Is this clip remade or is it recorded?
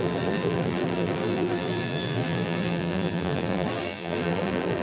remade